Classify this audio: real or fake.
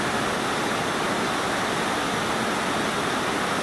real